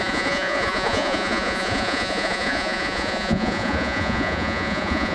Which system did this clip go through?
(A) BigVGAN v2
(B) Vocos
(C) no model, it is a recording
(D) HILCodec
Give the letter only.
B